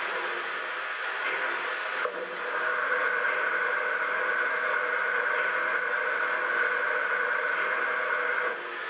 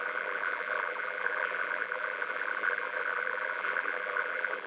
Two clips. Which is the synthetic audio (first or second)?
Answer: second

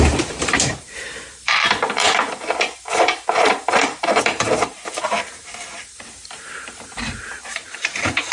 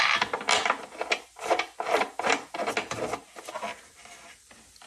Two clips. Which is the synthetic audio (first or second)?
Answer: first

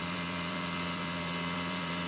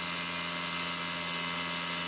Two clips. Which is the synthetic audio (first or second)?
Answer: first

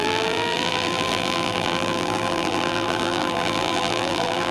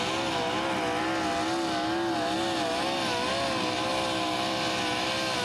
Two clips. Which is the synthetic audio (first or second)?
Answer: first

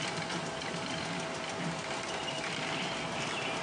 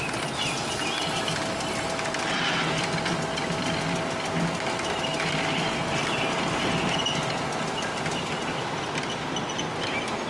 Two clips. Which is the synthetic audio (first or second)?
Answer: first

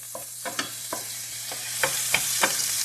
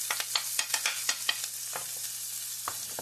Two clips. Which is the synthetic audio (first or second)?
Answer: first